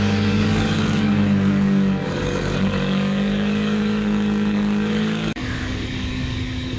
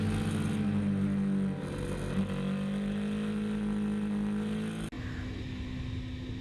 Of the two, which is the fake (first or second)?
first